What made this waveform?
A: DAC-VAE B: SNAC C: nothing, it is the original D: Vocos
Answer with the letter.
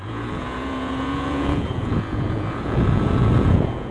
D